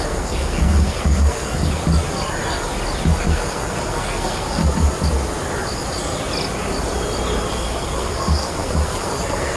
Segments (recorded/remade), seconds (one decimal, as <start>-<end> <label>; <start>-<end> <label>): 0.0-1.8 remade; 1.8-3.2 recorded; 3.2-4.6 remade; 4.6-7.5 recorded; 7.5-9.6 remade